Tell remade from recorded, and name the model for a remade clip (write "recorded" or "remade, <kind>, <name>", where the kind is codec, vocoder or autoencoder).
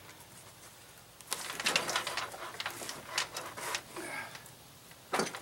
recorded